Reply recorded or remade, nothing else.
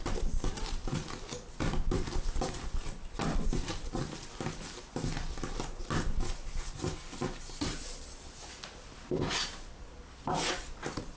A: recorded